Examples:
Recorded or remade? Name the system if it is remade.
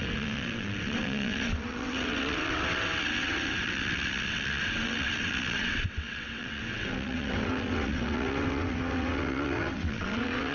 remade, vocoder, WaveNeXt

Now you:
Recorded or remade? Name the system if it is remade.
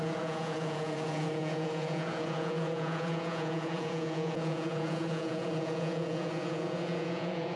remade, vocoder, Vocos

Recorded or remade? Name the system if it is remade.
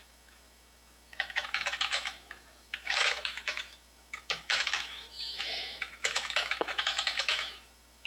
remade, autoencoder, DAC-VAE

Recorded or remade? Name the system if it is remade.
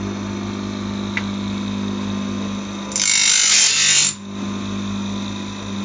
recorded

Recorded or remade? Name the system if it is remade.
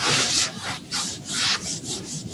remade, vocoder, BigVGAN v2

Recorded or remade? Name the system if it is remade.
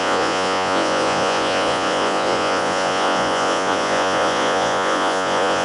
remade, vocoder, Vocos